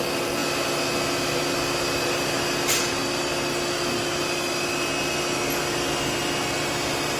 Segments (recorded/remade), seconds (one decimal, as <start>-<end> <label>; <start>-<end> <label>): 0.0-7.2 recorded